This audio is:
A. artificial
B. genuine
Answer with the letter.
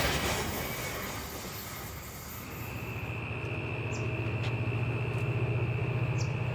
B